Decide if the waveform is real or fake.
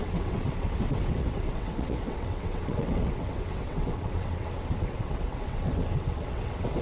fake